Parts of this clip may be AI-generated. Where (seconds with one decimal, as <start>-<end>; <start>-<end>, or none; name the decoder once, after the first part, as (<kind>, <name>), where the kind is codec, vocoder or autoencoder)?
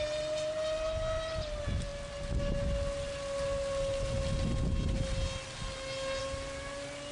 none